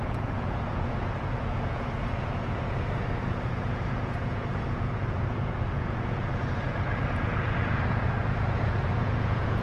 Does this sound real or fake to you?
fake